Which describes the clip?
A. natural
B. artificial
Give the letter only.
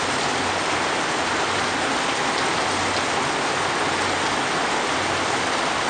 A